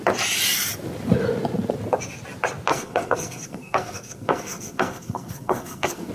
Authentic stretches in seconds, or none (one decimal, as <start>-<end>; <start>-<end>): 0.0-2.7